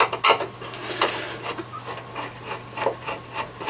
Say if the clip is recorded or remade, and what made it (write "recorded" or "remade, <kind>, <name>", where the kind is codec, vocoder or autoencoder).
recorded